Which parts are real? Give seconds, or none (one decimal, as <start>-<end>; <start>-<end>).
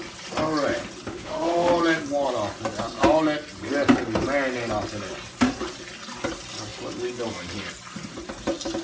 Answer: 0.0-1.1; 1.7-8.8